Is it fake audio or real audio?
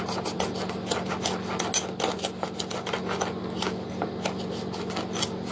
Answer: real